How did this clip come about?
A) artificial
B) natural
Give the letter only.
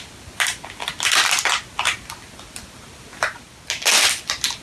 B